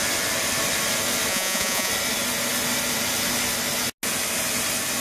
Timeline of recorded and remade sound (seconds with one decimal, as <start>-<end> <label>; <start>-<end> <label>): 0.0-1.3 recorded; 1.3-1.9 remade; 1.9-5.0 recorded